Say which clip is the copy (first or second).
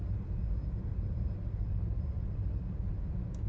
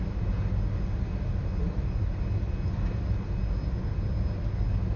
first